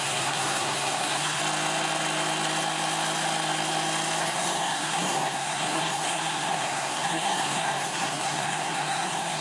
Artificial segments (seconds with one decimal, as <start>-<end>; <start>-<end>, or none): 0.0-1.4; 4.2-9.4